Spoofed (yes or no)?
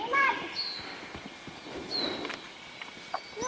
no